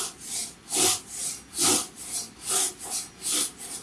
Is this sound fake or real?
real